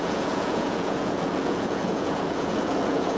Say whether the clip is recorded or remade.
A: remade